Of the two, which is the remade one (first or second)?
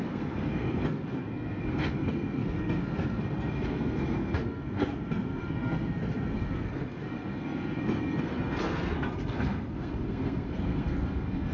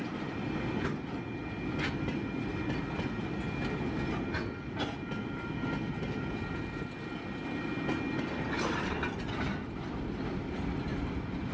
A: first